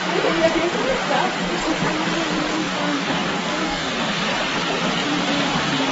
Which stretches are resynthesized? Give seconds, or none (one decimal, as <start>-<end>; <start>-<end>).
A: 2.5-4.0